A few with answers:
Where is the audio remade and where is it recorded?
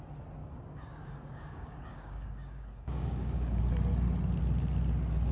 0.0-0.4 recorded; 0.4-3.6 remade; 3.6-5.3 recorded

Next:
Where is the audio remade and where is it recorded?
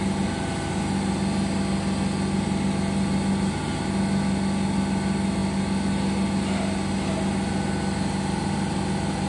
0.0-9.3 recorded